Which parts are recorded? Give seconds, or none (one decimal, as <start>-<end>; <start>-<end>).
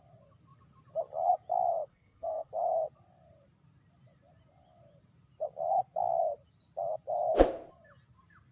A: 0.0-1.9; 2.5-8.5